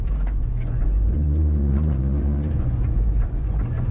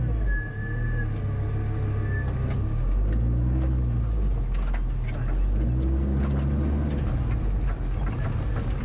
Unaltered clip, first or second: second